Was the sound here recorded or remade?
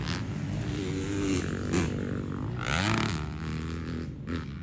recorded